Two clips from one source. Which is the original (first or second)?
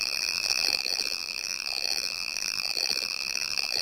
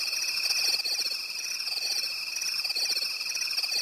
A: second